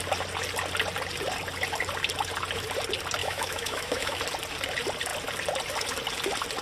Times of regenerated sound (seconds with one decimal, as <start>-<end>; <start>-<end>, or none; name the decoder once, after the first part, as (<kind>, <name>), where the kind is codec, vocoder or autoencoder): 3.2-4.2 (autoencoder, DAC-VAE)